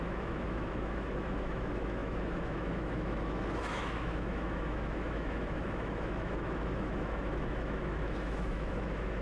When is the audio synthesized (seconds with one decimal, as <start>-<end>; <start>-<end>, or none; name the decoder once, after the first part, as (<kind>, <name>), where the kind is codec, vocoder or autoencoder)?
0.0-9.2 (autoencoder, DAC-VAE)